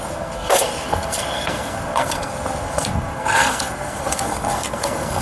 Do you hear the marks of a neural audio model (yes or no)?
yes